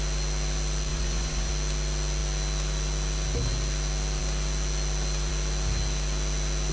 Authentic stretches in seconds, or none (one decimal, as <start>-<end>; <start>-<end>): 0.0-0.9; 1.5-6.7